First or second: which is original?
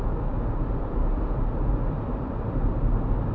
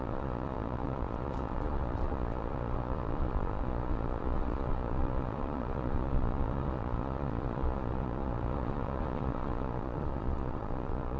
first